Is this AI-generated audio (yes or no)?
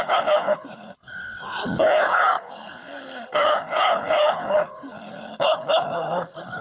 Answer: yes